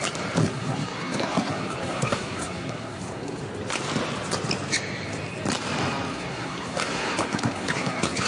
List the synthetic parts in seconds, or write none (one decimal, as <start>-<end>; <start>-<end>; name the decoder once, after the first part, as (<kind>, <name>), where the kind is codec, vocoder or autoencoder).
0.4-3.4 (codec, SNAC); 6.1-8.3